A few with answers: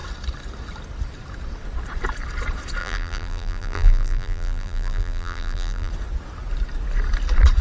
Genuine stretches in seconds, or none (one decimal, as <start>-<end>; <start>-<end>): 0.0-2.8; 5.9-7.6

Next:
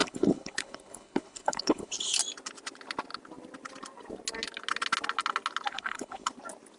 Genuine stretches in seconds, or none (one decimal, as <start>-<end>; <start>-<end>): 2.2-5.7; 6.3-6.8

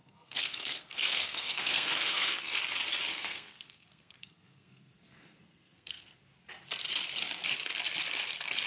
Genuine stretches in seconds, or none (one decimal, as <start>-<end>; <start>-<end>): 2.6-3.1; 6.2-8.7

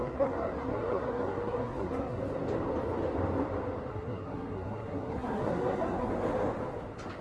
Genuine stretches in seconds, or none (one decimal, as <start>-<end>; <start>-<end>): 2.2-3.9; 6.1-7.2

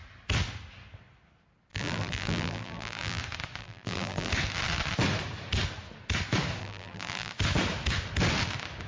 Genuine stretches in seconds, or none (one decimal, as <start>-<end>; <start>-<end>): 0.0-1.7; 3.2-3.6; 4.3-6.6; 7.3-8.9

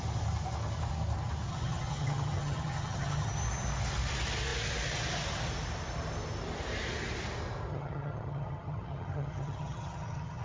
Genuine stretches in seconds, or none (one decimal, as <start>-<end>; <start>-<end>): 0.0-1.5; 3.3-7.7

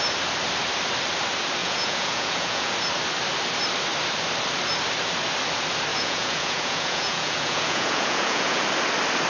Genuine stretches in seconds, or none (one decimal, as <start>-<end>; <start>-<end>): 0.0-1.6; 2.7-5.9; 8.6-9.3

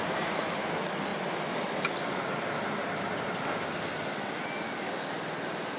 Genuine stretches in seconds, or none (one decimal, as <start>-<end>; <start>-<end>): 0.0-5.8